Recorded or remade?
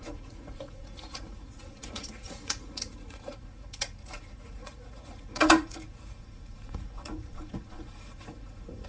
remade